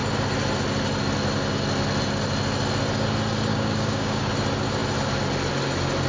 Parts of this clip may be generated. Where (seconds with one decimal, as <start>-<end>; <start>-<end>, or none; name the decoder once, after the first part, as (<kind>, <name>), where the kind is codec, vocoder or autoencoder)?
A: 3.5-4.3 (codec, DAC)